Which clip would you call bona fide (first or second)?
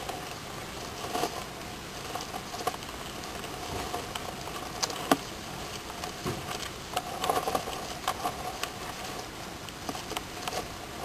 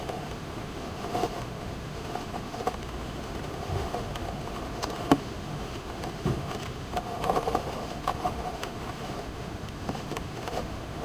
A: first